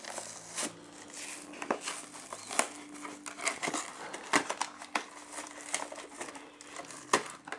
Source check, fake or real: real